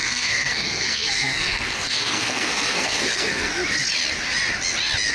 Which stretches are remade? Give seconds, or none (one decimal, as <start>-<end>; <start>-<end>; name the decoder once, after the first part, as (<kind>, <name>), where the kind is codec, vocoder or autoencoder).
0.0-3.5 (codec, SNAC)